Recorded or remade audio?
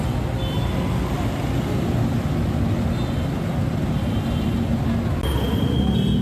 recorded